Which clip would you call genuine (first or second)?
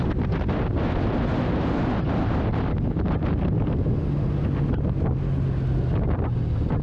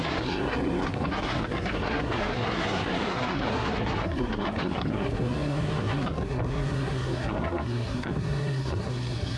first